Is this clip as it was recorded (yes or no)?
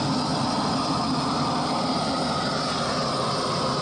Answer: yes